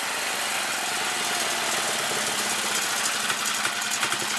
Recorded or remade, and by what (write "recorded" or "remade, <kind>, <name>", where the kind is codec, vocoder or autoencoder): recorded